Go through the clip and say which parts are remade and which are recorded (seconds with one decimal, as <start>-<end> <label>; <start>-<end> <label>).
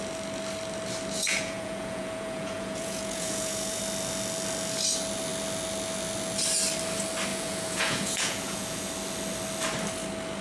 0.0-1.2 recorded; 1.2-3.8 remade; 3.8-7.3 recorded; 7.3-8.9 remade; 8.9-10.4 recorded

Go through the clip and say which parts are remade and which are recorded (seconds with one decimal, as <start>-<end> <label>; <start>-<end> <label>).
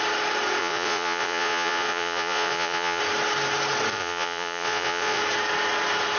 0.0-0.6 recorded; 0.6-3.0 remade; 3.0-3.9 recorded; 3.9-5.2 remade; 5.2-6.2 recorded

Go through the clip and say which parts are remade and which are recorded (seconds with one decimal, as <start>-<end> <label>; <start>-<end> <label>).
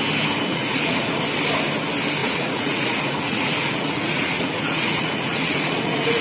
0.0-0.5 recorded; 0.5-1.2 remade; 1.2-2.2 recorded; 2.2-6.2 remade